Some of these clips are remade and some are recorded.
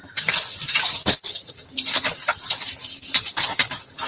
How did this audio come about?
remade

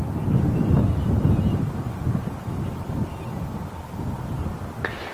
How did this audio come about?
recorded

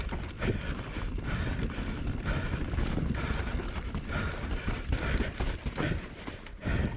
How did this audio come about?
remade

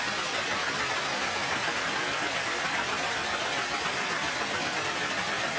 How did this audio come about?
remade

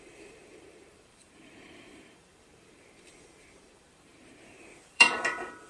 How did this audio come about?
remade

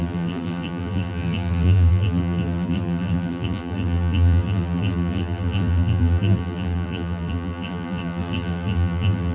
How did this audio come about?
remade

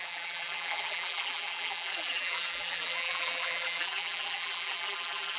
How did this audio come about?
remade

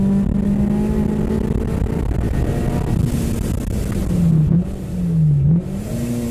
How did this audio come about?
recorded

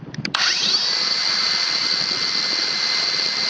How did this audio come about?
remade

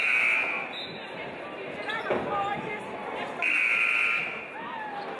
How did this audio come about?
recorded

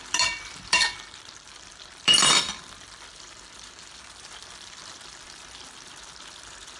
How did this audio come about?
remade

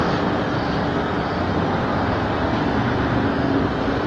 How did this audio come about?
recorded